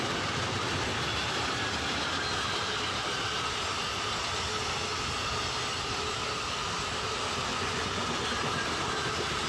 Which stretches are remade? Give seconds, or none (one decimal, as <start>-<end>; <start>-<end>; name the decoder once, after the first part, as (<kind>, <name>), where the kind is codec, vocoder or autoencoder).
7.5-8.3 (vocoder, Vocos)